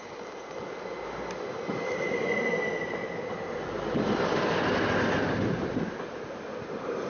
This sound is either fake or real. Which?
real